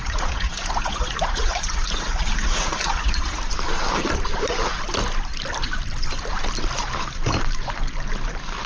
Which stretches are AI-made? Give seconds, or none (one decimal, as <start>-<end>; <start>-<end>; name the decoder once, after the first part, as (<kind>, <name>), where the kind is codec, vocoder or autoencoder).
0.0-3.4 (vocoder, Vocos)